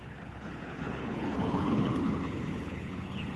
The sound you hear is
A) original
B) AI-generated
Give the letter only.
B